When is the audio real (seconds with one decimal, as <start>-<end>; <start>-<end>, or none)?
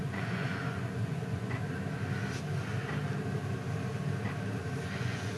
1.6-4.8